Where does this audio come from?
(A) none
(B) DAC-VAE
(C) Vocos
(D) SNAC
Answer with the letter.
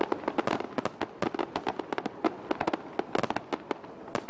A